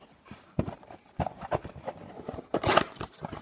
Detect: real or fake fake